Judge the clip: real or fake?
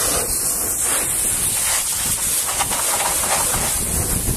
real